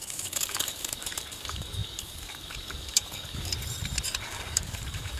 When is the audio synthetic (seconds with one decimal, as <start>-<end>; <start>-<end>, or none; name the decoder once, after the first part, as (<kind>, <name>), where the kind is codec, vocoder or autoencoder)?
0.0-3.5 (codec, DAC); 4.2-5.2